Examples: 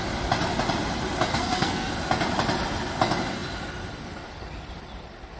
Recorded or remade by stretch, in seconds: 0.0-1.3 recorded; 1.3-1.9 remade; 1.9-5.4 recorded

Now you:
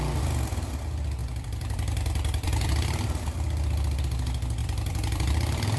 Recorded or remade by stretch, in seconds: 0.0-1.2 recorded; 1.2-4.0 remade; 4.0-4.6 recorded; 4.6-5.8 remade

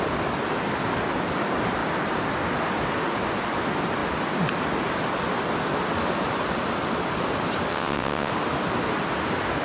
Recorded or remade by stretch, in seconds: 0.0-7.7 recorded; 7.7-8.3 remade; 8.3-9.6 recorded